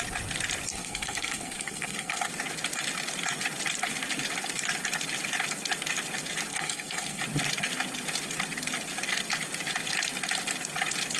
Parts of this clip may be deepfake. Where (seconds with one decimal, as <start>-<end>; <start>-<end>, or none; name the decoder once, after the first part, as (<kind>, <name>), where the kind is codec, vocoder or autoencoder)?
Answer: 0.7-2.3 (codec, SNAC); 6.5-7.2

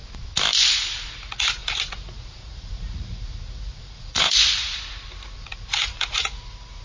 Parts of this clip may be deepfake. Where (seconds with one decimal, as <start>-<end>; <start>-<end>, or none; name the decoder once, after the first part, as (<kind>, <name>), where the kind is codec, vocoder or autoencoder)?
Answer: 1.1-6.8 (vocoder, Vocos)

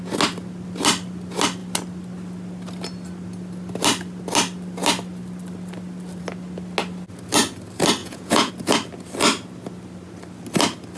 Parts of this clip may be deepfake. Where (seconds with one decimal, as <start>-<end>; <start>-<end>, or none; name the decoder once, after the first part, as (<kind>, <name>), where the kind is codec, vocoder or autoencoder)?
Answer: 8.0-8.5 (vocoder, Vocos)

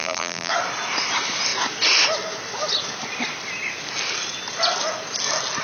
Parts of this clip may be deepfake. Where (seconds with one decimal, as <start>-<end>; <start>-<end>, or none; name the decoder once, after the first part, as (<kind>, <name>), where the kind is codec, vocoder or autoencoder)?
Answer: 0.0-0.5 (vocoder, BigVGAN v2)

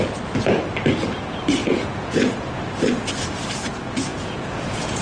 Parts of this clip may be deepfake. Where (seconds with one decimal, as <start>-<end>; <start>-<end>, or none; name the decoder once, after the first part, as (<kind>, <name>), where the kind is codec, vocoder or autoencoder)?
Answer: 1.6-2.6 (vocoder, Vocos); 4.1-5.0

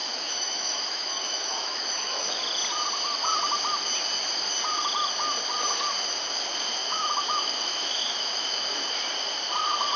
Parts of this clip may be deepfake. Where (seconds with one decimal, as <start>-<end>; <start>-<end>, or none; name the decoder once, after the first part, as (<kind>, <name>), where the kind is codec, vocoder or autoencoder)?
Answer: 0.0-2.3 (autoencoder, DAC-VAE); 6.8-8.9

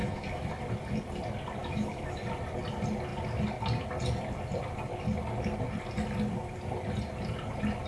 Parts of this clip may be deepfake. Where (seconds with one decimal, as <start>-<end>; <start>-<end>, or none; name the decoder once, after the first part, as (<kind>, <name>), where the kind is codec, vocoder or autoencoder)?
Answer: 0.0-0.5 (autoencoder, DAC-VAE); 1.6-2.2

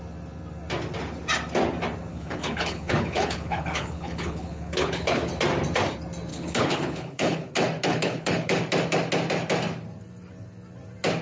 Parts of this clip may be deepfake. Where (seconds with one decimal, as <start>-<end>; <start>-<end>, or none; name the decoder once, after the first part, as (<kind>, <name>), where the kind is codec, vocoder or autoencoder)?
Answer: 2.1-5.3 (codec, HILCodec); 6.3-7.5; 7.9-8.6